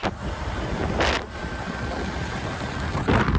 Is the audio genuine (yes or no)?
yes